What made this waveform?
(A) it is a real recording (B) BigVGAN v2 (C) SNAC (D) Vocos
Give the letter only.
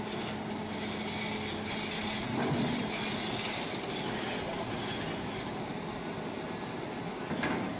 A